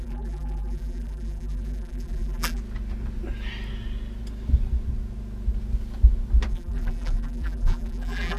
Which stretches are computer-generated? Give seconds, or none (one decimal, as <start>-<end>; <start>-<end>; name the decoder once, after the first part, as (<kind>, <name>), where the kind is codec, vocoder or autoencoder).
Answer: 0.0-2.6 (vocoder, BigVGAN v2); 6.5-8.4